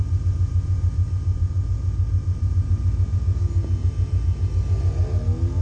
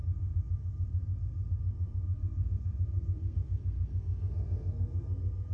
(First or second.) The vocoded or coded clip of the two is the second